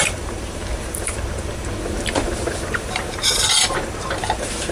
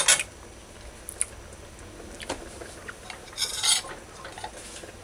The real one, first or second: second